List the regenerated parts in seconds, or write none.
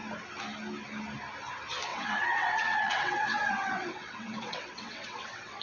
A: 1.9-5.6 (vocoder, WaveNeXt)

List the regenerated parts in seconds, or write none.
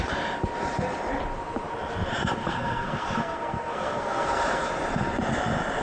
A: 2.4-4.7 (codec, SNAC)